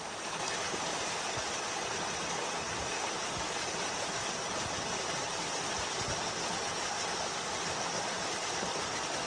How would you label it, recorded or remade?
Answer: recorded